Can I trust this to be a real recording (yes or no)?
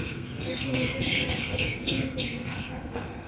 no